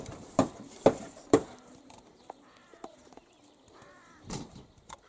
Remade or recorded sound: recorded